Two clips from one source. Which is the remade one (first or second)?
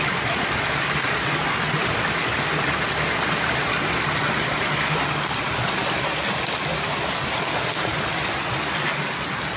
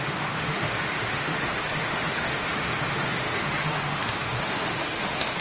second